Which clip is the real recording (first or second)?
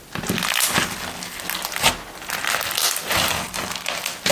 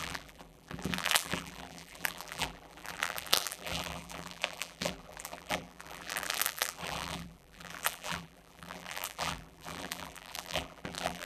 first